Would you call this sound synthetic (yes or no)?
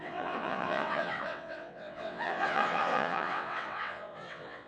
yes